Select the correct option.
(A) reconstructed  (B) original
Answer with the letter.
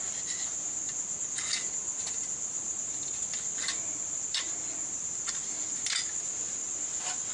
B